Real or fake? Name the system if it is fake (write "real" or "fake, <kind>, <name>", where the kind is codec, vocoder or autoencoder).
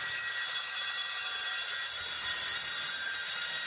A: real